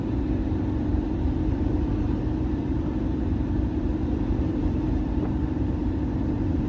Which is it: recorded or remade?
remade